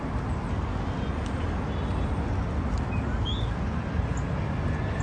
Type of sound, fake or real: real